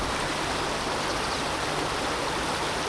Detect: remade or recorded recorded